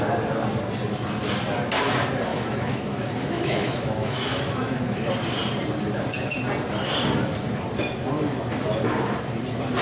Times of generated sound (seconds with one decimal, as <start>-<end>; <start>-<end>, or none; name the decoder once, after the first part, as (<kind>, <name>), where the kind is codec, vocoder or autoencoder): 2.3-5.1 (autoencoder, DAC-VAE)